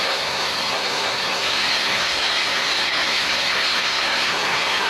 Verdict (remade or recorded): remade